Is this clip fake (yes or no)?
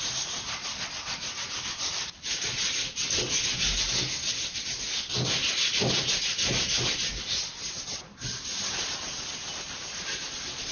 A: no